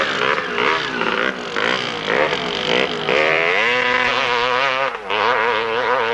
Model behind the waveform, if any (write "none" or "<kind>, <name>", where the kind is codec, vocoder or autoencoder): none